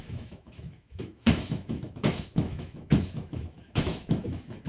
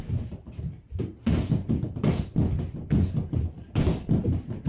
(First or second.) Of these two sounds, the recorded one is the second